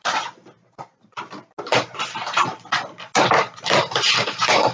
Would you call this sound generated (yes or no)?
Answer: no